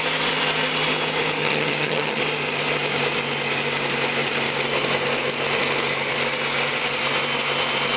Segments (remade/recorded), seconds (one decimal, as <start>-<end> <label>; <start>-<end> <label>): 0.0-1.4 recorded; 1.4-2.2 remade; 2.2-8.0 recorded